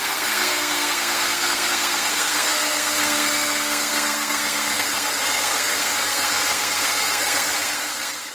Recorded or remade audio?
remade